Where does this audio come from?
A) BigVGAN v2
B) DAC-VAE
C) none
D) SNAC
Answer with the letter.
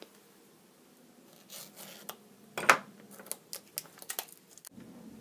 C